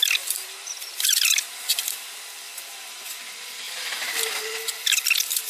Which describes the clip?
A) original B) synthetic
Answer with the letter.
B